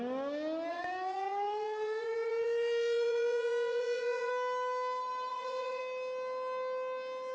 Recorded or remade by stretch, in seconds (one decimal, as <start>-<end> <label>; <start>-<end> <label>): 0.0-0.7 recorded; 0.7-4.3 remade; 4.3-5.3 recorded; 5.3-5.8 remade; 5.8-7.3 recorded